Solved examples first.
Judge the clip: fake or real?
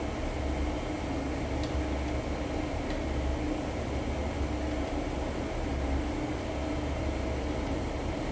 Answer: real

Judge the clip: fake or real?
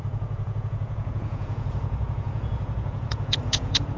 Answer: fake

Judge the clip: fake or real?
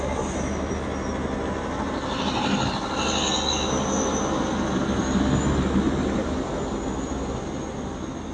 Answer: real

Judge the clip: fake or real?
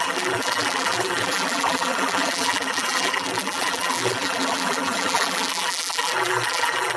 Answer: fake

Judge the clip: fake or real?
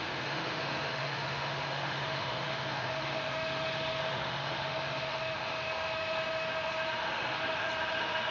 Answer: fake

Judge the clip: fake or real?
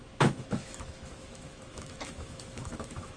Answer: fake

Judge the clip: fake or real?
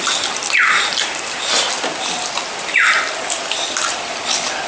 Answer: real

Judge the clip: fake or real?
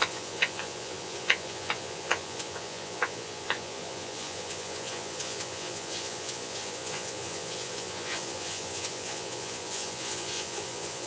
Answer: fake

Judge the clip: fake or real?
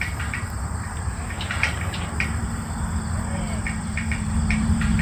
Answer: fake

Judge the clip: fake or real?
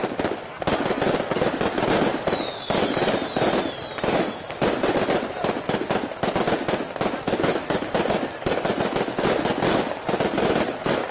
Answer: real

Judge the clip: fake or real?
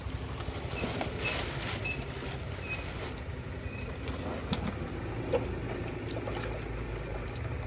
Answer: real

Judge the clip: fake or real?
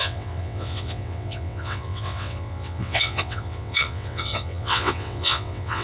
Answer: fake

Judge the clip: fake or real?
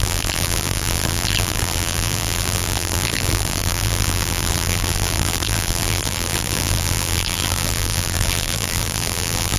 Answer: fake